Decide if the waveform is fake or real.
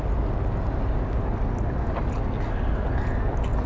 real